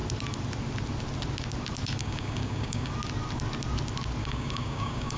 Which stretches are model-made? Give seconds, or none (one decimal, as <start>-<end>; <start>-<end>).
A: 2.0-2.9; 4.2-5.2